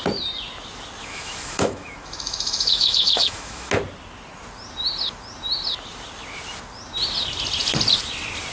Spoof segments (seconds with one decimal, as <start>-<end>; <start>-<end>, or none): 1.0-3.7